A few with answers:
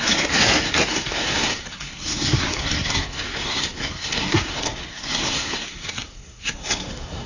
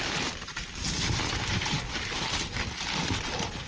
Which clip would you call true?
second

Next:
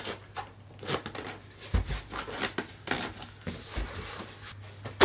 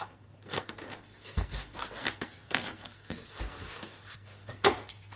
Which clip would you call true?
first